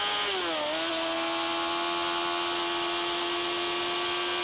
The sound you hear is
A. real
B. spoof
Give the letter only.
A